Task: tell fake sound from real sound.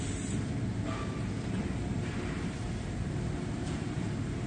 real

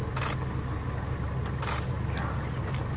real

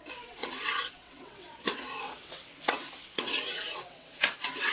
fake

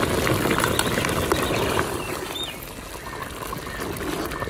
real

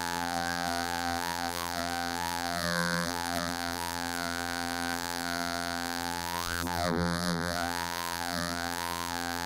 fake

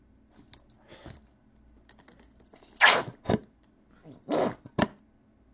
real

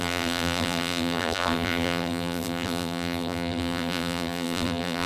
fake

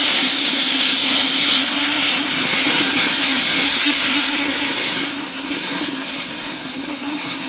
fake